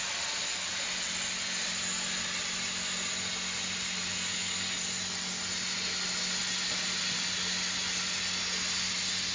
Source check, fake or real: real